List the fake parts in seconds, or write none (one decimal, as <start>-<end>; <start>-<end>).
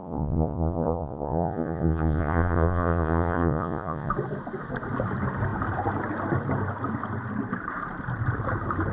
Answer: 0.0-4.1